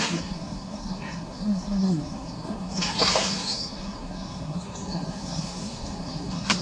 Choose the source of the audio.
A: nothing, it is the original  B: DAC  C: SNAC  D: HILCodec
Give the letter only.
C